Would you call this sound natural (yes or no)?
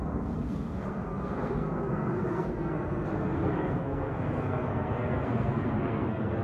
no